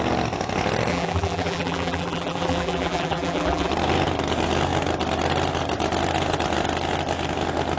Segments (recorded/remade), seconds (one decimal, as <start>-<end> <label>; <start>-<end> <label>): 0.0-0.9 recorded; 0.9-3.7 remade; 3.7-7.8 recorded